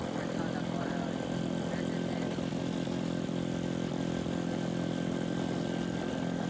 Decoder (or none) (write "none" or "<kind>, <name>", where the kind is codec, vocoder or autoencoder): none